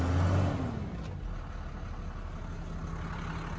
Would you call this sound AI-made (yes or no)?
no